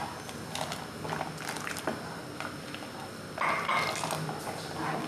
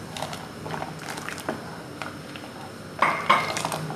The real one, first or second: first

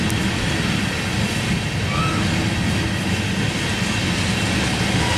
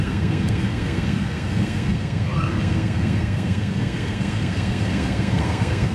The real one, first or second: first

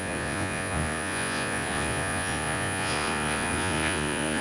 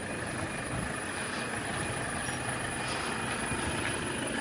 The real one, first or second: second